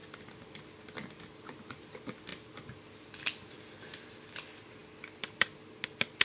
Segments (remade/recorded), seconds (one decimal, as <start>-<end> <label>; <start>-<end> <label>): 0.0-6.2 recorded